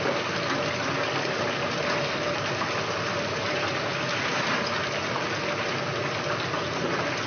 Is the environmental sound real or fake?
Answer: real